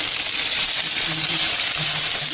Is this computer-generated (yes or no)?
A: yes